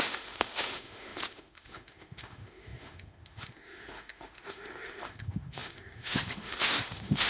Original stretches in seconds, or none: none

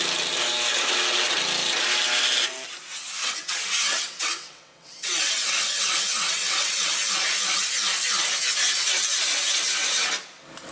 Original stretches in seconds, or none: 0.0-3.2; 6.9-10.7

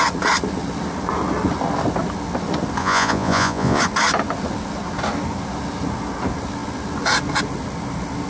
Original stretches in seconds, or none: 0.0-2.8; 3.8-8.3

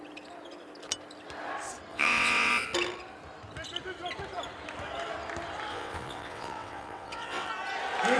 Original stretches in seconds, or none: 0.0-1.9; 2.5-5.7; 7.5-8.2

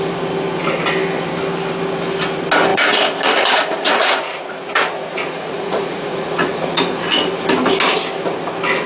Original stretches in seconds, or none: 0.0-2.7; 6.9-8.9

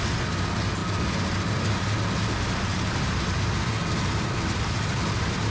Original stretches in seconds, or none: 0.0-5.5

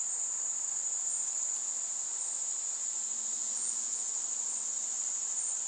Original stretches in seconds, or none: 0.0-3.4; 4.1-5.7

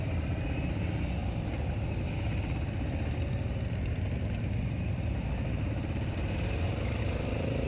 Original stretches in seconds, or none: 0.0-7.7